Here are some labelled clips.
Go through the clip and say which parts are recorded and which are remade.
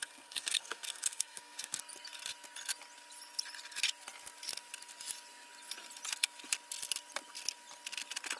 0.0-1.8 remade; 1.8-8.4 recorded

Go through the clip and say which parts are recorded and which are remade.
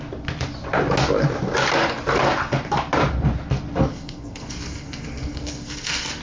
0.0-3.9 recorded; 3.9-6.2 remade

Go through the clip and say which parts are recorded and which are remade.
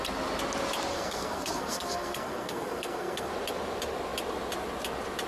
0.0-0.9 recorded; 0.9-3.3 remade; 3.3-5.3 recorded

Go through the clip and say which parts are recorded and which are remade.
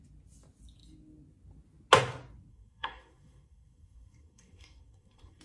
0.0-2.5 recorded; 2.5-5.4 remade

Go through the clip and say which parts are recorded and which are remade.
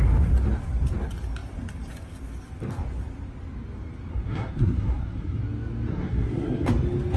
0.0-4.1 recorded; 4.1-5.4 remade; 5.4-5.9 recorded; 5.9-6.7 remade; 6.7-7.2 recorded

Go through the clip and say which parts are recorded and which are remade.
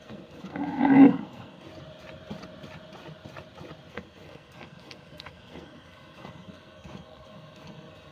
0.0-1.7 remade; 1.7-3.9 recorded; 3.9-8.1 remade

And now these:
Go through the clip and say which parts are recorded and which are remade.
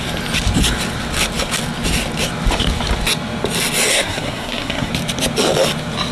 0.0-3.9 recorded; 3.9-4.9 remade; 4.9-6.1 recorded